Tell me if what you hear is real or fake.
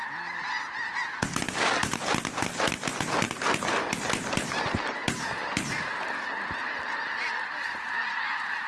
real